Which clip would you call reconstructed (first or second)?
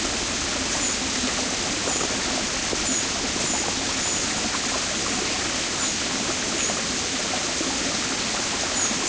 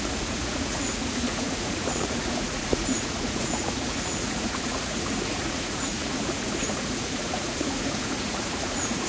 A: second